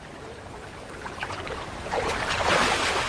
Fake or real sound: fake